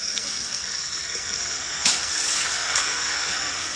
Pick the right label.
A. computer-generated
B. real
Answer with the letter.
A